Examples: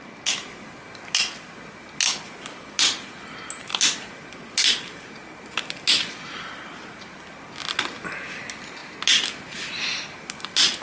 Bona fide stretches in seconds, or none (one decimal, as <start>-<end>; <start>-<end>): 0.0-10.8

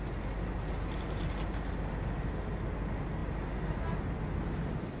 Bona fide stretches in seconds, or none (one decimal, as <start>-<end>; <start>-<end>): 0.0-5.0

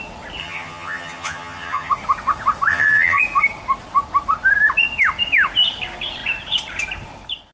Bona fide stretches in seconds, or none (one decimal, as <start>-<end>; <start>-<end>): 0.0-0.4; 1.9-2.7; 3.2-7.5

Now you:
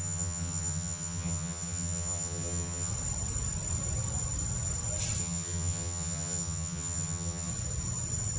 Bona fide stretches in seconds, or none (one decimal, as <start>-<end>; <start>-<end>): 2.9-5.2; 7.5-8.4

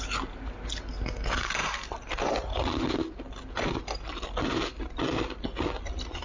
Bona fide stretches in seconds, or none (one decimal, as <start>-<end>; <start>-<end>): 0.0-6.2

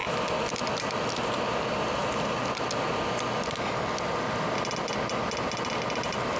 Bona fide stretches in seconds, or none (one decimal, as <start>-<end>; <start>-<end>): 0.0-6.4

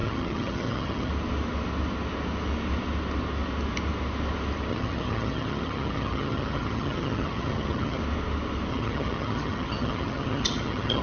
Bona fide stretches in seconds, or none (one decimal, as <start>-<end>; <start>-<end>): 1.1-4.7; 8.0-8.7